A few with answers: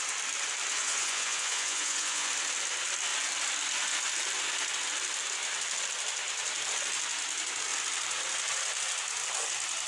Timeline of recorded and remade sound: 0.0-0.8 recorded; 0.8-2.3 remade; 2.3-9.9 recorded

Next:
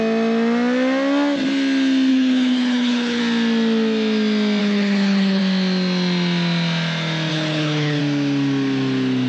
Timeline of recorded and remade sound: 0.0-2.1 recorded; 2.1-3.2 remade; 3.2-4.6 recorded; 4.6-5.4 remade; 5.4-7.3 recorded; 7.3-8.0 remade; 8.0-9.3 recorded

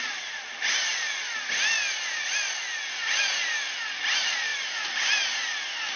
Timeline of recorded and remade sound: 0.0-6.0 recorded